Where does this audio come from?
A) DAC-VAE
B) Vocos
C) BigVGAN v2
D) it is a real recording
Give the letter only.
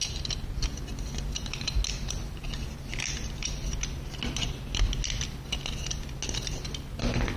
D